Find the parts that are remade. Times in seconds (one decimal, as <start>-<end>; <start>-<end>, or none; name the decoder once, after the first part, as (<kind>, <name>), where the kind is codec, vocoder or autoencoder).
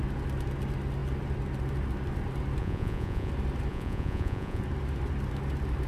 2.6-3.3 (vocoder, Vocos); 3.7-4.6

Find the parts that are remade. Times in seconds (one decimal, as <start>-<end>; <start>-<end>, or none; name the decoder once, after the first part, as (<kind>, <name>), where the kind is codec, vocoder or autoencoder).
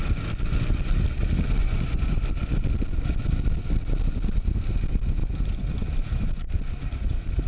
1.6-2.2 (vocoder, Vocos)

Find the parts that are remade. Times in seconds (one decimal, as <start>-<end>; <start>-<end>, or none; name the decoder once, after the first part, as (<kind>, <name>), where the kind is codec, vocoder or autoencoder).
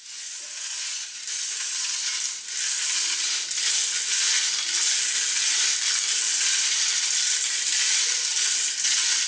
0.0-1.1 (vocoder, Vocos)